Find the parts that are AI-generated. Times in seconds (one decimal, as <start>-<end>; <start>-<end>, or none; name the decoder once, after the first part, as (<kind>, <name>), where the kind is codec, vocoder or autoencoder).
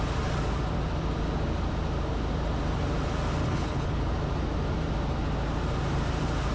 3.4-4.0 (codec, HILCodec)